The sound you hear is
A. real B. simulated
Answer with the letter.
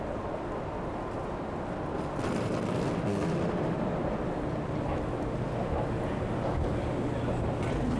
A